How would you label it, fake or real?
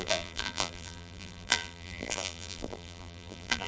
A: fake